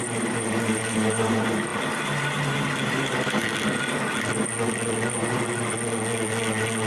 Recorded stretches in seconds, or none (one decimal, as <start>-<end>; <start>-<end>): 1.7-2.9; 3.4-6.9